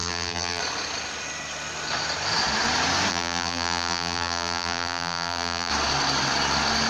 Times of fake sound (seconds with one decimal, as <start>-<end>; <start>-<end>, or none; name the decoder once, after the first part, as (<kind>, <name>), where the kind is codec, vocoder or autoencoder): 0.0-0.6 (vocoder, BigVGAN v2); 3.1-5.7